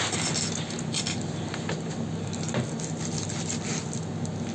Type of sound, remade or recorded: recorded